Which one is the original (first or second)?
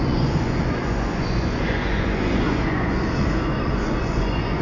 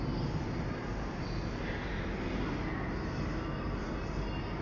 second